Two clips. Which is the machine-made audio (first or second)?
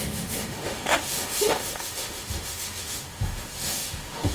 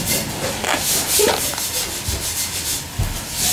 first